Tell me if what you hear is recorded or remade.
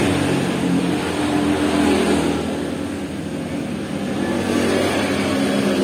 recorded